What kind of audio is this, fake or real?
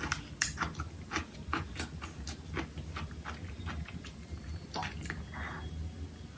real